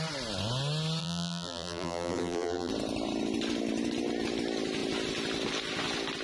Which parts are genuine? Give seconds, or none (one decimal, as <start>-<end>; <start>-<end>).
0.0-1.0; 2.7-6.2

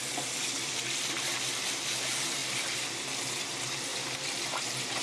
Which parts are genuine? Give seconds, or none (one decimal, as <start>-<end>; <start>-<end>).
3.9-5.0

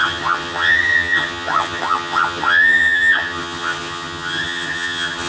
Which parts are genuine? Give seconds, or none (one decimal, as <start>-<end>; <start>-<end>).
none

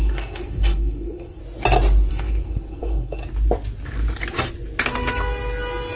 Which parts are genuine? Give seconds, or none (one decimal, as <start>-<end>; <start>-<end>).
1.4-2.1; 3.2-6.0

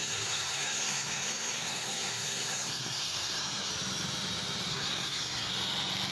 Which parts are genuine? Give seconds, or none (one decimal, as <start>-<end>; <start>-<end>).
3.7-4.7; 5.5-6.1

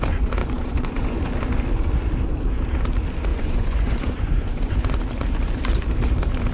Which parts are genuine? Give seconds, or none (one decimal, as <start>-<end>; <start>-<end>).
0.0-0.4; 1.3-3.3; 4.7-6.5

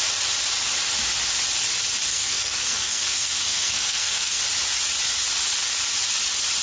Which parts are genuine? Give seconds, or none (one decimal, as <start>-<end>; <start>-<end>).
0.0-2.1; 4.4-6.6

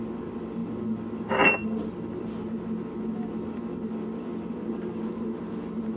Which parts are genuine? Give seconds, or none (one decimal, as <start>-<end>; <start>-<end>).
0.0-6.0